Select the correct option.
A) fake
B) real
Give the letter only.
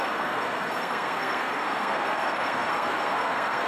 A